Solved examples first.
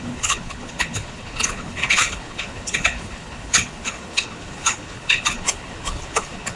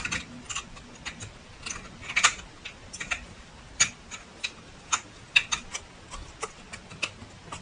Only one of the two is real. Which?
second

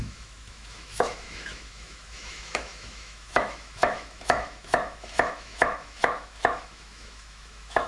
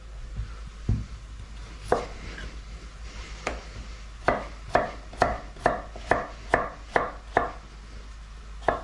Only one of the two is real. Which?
second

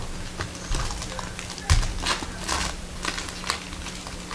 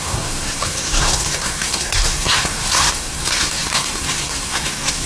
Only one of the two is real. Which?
first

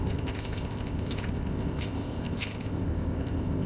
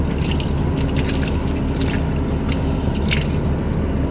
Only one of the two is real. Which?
second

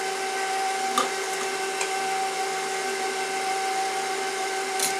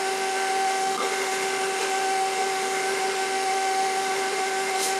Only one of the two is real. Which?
first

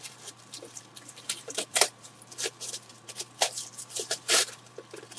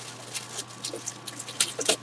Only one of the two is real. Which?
second